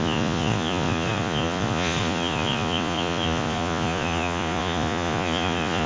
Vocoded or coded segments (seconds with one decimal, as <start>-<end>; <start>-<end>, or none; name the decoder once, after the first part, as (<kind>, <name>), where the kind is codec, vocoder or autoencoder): 0.0-5.9 (vocoder, Vocos)